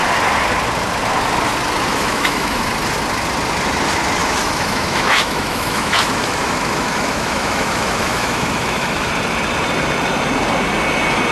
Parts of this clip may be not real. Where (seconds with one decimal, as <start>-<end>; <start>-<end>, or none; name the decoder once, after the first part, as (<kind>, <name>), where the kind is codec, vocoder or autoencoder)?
1.9-2.7 (autoencoder, DAC-VAE); 4.2-9.1